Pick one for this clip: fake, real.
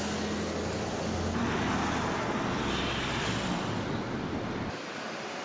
real